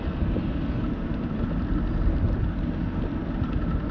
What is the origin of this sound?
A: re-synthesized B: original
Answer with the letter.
B